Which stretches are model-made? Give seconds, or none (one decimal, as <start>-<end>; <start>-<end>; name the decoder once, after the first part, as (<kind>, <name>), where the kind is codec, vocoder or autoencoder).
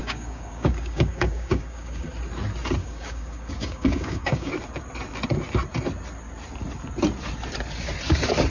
0.0-2.1 (codec, DAC); 2.8-4.5